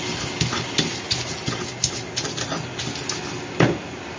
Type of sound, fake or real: real